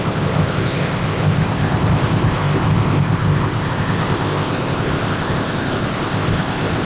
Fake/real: fake